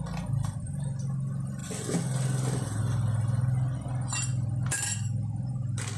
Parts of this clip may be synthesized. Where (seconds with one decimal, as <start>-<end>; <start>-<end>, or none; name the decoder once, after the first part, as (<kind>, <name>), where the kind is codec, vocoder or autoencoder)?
none